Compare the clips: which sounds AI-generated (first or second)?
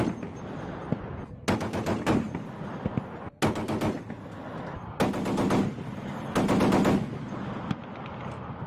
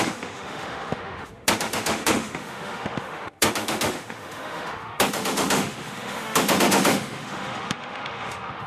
second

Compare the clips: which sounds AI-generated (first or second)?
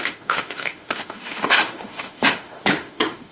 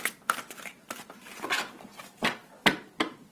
first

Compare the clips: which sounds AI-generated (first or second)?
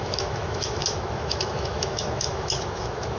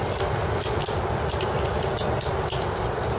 first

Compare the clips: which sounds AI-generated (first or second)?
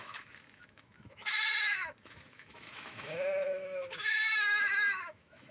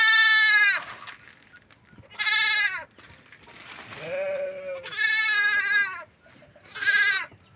first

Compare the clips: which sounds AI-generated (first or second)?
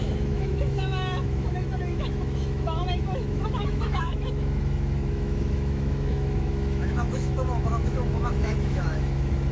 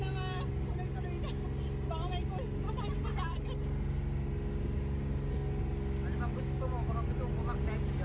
first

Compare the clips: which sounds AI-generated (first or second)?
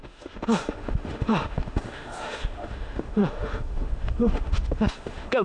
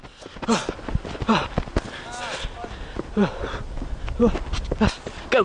first